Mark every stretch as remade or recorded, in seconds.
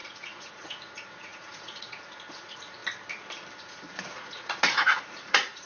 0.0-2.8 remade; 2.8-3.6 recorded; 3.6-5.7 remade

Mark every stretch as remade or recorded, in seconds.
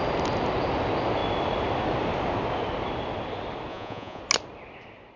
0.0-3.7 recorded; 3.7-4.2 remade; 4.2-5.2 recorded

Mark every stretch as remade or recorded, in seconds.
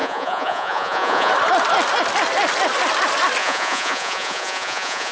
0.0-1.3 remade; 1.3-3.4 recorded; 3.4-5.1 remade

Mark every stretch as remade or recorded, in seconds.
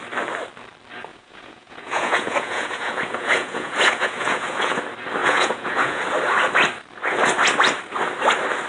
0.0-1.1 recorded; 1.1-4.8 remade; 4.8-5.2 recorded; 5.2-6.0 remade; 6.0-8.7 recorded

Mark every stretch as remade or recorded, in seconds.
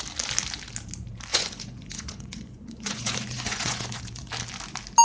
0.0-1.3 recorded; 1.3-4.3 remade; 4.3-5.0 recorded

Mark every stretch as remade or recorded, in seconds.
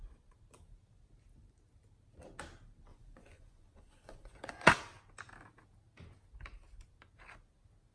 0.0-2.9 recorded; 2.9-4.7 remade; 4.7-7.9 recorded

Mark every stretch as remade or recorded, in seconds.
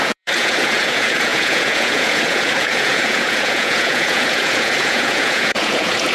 0.0-6.1 remade